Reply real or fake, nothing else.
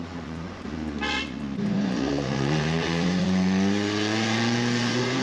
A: fake